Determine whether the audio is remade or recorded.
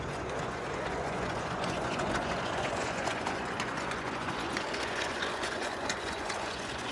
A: remade